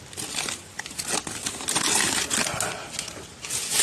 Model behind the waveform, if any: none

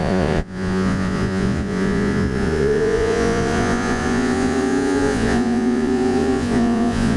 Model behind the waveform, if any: vocoder, Vocos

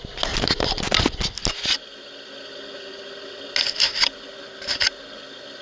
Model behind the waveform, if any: none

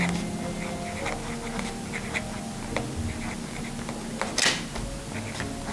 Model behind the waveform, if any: none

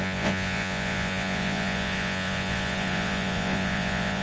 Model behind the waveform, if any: vocoder, Vocos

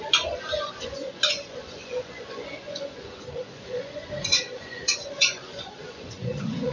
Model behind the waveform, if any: vocoder, Vocos